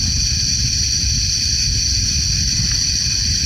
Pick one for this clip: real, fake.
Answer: real